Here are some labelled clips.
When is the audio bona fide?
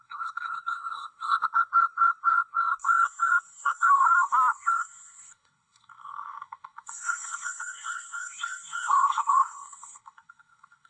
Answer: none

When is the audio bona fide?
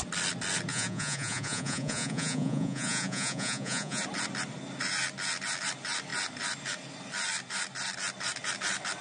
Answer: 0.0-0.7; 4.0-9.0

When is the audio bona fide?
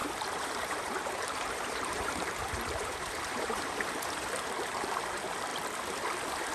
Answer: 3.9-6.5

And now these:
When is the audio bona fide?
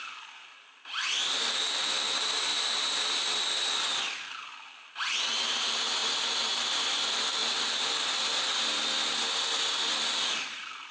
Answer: 2.5-4.7; 8.5-9.9